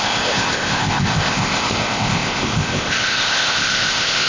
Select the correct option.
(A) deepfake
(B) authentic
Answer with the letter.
A